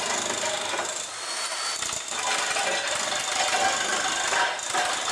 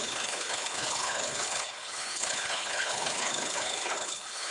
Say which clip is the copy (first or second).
second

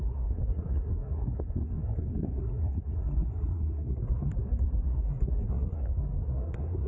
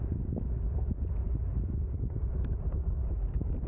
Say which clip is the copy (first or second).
first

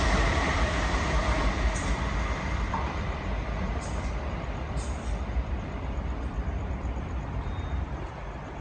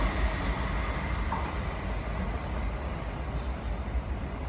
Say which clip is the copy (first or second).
first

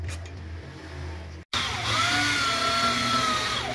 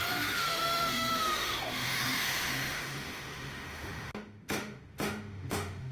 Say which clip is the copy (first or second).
second